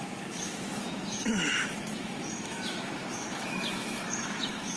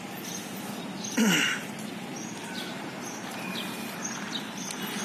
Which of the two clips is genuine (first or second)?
second